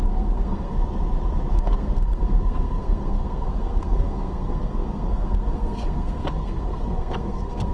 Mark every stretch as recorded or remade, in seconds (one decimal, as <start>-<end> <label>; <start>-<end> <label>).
0.0-0.7 remade; 0.7-1.5 recorded; 1.5-7.7 remade